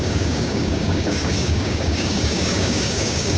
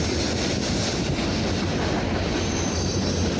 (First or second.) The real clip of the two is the second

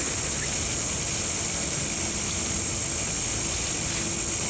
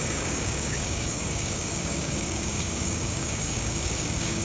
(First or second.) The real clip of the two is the first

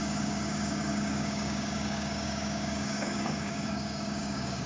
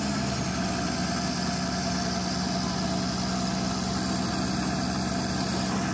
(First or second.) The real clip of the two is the second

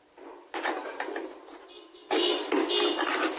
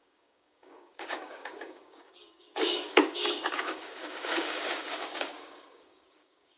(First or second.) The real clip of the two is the first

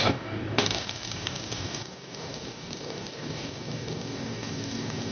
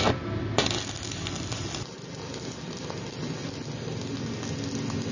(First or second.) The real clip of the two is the second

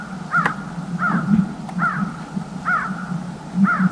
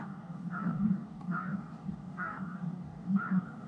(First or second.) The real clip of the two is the first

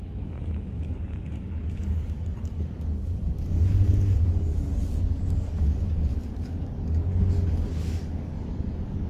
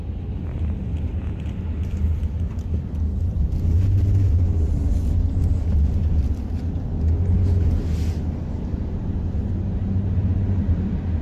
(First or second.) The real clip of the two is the second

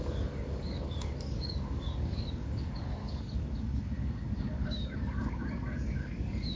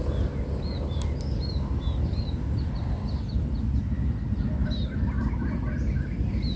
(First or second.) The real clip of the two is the second